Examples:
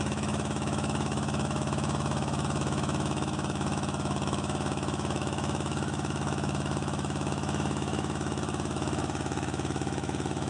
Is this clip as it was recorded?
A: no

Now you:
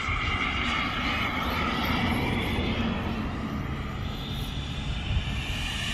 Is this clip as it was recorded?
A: yes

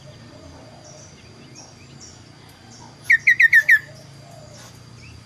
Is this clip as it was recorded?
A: yes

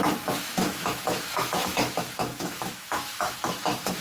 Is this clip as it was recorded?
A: no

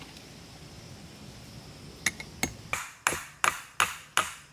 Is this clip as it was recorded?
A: yes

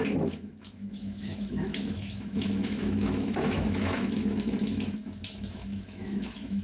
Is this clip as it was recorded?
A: no